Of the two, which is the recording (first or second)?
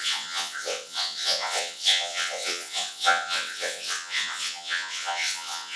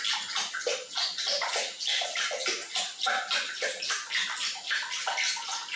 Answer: second